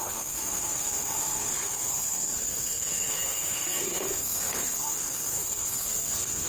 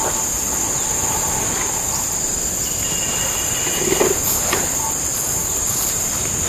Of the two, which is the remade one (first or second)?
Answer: first